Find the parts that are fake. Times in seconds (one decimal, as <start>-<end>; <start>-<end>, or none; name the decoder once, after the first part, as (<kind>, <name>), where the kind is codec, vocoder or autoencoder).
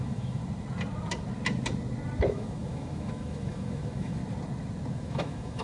0.0-0.4 (autoencoder, DAC-VAE); 2.3-4.2; 4.9-5.6